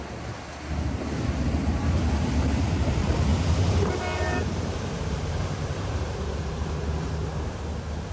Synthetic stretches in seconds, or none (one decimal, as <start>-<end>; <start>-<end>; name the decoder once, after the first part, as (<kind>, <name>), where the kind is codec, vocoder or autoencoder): 3.3-6.8 (vocoder, BigVGAN v2)